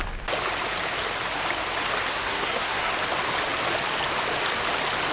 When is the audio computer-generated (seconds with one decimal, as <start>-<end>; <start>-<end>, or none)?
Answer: 2.1-2.9